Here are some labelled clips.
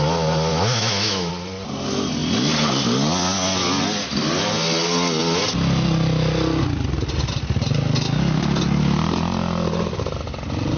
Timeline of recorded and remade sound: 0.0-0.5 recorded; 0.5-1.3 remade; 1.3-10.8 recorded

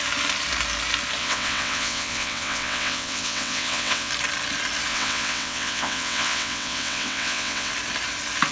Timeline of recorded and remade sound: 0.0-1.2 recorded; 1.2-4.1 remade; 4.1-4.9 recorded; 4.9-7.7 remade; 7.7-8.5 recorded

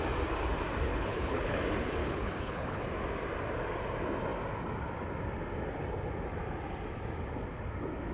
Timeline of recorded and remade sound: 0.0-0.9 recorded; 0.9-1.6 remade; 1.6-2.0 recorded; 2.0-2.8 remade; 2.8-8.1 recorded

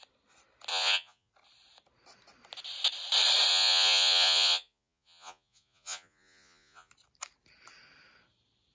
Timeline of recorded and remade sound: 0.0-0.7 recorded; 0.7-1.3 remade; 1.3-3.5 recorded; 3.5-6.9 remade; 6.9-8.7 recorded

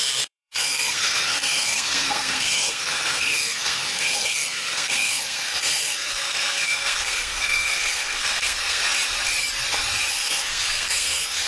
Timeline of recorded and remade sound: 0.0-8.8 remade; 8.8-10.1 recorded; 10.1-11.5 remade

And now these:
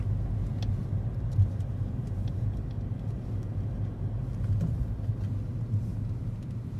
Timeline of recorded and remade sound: 0.0-0.8 recorded; 0.8-4.4 remade; 4.4-6.8 recorded

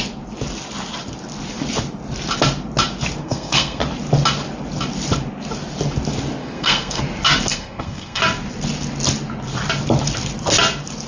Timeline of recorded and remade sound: 0.0-3.2 recorded; 3.2-3.8 remade; 3.8-6.4 recorded; 6.4-7.0 remade; 7.0-7.5 recorded; 7.5-8.2 remade; 8.2-11.1 recorded